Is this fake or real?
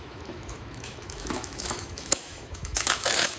fake